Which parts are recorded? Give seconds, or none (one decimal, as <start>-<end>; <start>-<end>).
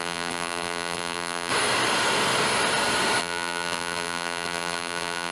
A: 1.5-3.2